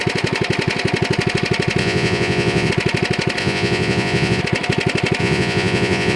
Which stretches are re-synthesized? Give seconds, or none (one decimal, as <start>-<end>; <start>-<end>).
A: 1.8-2.7; 3.4-4.4; 5.2-6.2